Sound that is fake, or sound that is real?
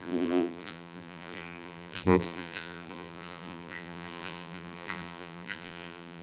fake